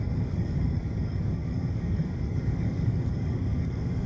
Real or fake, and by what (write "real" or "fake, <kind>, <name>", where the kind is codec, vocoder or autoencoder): fake, codec, DAC